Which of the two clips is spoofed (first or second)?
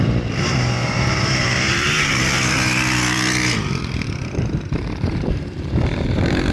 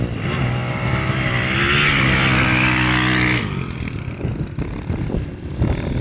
first